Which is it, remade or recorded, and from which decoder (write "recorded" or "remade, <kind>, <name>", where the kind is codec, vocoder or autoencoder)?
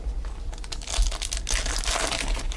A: recorded